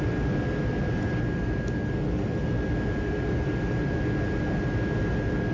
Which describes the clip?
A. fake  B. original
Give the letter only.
B